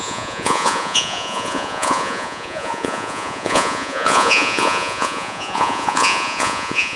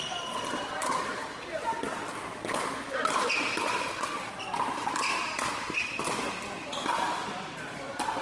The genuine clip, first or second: second